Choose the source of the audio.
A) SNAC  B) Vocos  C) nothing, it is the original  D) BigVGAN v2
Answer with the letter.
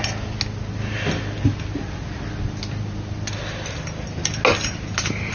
C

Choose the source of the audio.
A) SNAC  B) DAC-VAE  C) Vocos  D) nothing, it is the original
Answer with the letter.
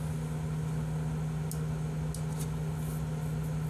D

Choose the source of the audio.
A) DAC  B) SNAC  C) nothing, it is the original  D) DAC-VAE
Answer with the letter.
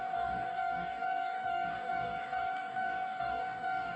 A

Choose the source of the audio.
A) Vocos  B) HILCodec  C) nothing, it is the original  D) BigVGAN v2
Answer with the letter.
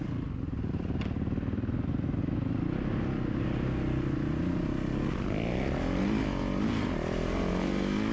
C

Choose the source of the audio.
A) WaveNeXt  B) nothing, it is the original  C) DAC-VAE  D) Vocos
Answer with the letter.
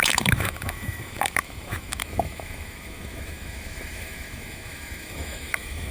C